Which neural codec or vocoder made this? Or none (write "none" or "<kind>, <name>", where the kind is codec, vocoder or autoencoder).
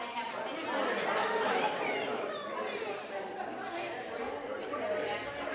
none